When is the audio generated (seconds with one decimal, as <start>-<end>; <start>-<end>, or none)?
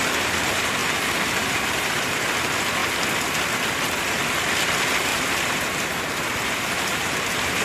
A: 0.8-2.2; 5.1-7.6